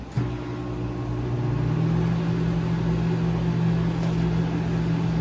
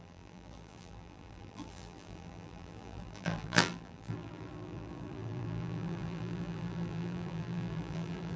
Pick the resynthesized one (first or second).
second